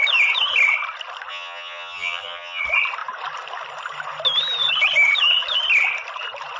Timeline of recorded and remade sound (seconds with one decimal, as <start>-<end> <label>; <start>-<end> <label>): 0.0-1.3 recorded; 1.3-2.6 remade; 2.6-6.6 recorded